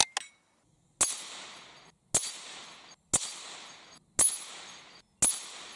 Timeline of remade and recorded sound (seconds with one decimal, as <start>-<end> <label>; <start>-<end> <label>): 0.0-5.8 recorded